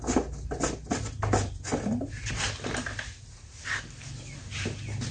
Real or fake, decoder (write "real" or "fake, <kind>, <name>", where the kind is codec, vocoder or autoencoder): real